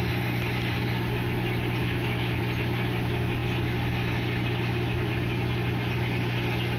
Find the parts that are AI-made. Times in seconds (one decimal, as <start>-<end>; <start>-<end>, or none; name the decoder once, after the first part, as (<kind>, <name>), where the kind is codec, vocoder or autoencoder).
1.8-2.4 (autoencoder, DAC-VAE)

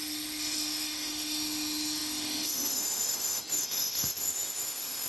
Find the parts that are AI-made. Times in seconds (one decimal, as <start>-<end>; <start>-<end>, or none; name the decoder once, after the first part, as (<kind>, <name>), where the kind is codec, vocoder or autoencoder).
0.0-5.1 (autoencoder, DAC-VAE)